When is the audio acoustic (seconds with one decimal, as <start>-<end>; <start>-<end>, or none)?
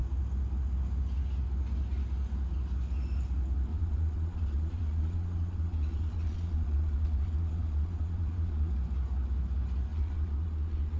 0.0-3.7; 8.7-9.9